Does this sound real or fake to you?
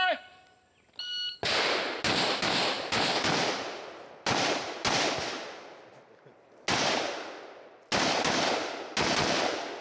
real